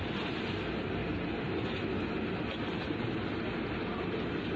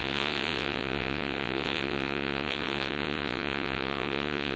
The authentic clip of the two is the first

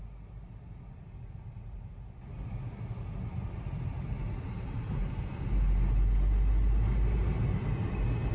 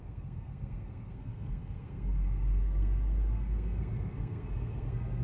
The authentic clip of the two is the first